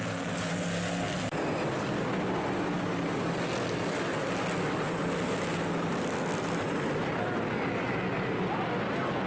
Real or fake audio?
real